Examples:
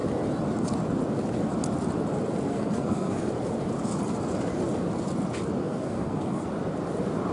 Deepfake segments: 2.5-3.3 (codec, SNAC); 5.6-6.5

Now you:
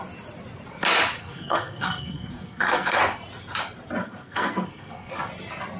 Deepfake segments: 1.2-3.0 (codec, SNAC); 4.0-5.1

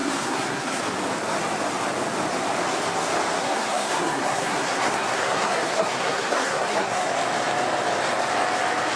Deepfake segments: 0.0-0.8 (codec, SNAC); 3.4-7.1

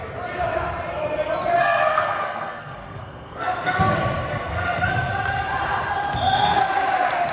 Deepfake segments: 1.6-3.8 (codec, SNAC); 4.3-5.1

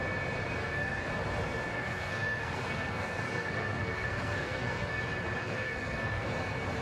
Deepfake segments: 0.6-1.1 (codec, SNAC); 1.7-5.0; 5.4-6.3